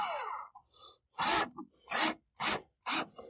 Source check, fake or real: real